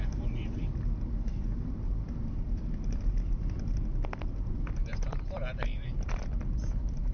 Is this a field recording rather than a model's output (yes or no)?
no